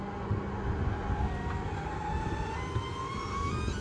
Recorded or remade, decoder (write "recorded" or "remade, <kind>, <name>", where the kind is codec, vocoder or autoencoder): recorded